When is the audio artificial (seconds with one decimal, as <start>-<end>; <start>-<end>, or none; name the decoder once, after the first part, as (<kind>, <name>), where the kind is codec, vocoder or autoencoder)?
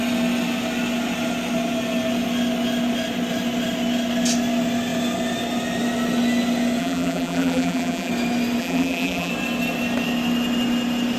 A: 6.8-8.1 (vocoder, BigVGAN v2); 8.6-9.3